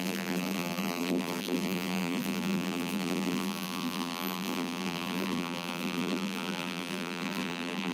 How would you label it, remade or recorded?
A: remade